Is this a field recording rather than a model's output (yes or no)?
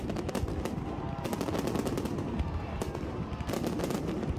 yes